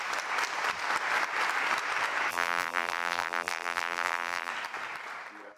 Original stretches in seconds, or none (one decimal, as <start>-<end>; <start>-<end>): 0.0-2.3; 4.5-5.6